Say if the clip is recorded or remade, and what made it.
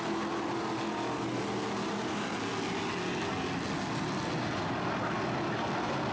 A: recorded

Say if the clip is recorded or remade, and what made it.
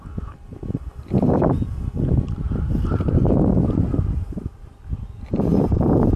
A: remade, vocoder, BigVGAN v2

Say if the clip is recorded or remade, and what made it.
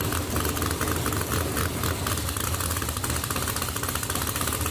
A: recorded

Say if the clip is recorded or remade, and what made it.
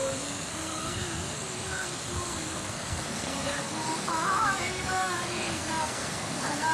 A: remade, codec, SNAC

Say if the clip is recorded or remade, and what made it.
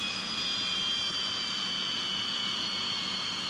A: remade, vocoder, Vocos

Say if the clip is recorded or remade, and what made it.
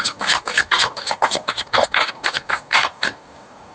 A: remade, codec, DAC